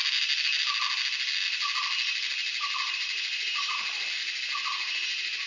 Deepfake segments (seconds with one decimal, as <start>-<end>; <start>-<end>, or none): none